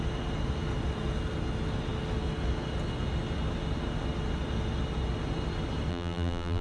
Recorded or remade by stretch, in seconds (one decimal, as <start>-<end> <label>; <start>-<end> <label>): 0.0-5.9 recorded; 5.9-6.6 remade